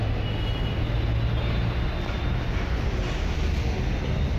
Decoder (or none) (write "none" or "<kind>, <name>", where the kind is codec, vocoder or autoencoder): none